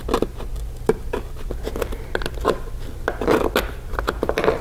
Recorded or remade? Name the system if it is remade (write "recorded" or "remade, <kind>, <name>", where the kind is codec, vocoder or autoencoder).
recorded